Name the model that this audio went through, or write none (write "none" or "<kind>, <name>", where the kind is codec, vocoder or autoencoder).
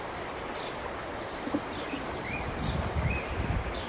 none